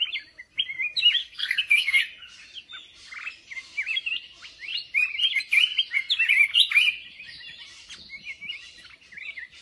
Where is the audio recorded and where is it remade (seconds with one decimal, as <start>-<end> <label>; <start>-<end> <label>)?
0.0-1.2 recorded; 1.2-2.0 remade; 2.0-9.6 recorded